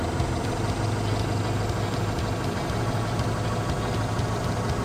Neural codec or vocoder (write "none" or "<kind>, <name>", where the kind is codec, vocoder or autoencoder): none